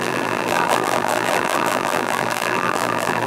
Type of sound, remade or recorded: remade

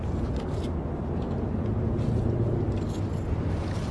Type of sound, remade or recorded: recorded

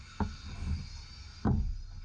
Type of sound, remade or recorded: recorded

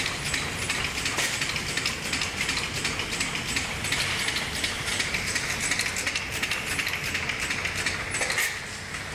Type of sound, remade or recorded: recorded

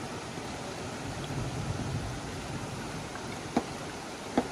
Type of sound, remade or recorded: remade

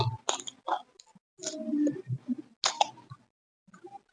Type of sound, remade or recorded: recorded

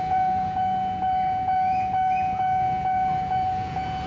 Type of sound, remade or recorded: remade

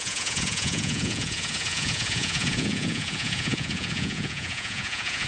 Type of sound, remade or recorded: remade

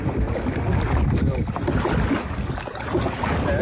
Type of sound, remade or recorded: recorded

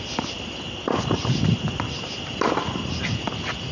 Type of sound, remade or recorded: recorded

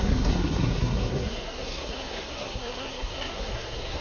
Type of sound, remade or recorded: remade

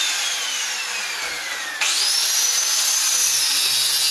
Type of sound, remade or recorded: recorded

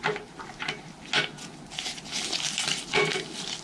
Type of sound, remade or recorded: recorded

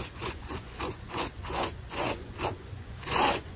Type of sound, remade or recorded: remade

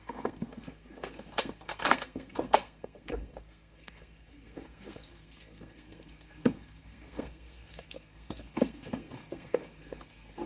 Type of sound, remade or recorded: remade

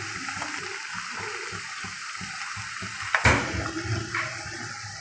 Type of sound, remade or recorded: recorded